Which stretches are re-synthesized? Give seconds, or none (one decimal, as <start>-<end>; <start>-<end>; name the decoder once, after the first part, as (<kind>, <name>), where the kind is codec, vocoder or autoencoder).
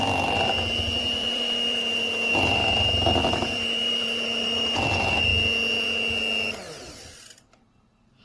0.0-5.3 (vocoder, BigVGAN v2)